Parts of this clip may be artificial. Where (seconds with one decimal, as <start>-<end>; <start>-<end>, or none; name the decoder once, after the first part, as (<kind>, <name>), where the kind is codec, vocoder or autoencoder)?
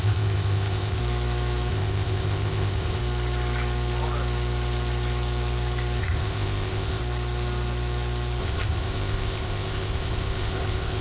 0.0-1.0 (codec, ZipCodec); 1.7-3.0; 6.0-7.0; 8.4-11.0